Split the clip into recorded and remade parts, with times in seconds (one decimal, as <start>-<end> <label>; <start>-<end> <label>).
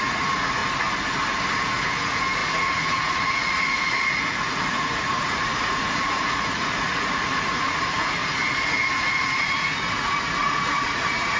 0.0-0.6 remade; 0.6-2.0 recorded; 2.0-8.2 remade; 8.2-8.9 recorded; 8.9-11.4 remade